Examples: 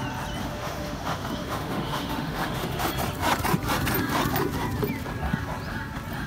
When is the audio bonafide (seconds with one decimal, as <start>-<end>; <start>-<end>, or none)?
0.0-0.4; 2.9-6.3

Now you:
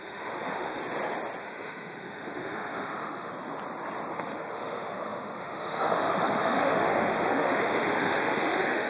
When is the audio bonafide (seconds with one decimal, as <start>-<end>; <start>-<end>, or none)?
0.8-1.4; 3.3-4.1

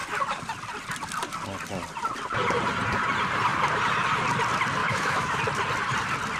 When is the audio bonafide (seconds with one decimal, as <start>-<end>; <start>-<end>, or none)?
0.0-4.8; 5.4-6.4

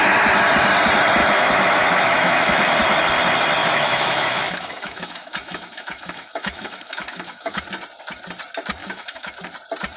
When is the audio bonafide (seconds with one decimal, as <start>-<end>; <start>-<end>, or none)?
0.0-1.2; 2.7-3.6; 7.6-8.8; 9.3-10.0

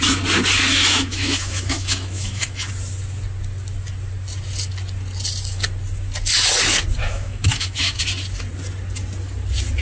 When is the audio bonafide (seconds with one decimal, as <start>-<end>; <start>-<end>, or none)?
0.0-0.8; 2.7-7.0; 8.0-9.8

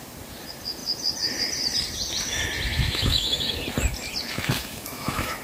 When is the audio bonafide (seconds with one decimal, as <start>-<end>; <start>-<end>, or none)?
0.0-2.7; 3.5-4.3